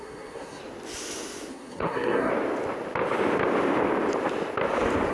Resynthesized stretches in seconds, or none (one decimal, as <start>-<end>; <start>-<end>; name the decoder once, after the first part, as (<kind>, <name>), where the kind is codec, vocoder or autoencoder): 0.0-0.6 (codec, SNAC); 1.5-2.3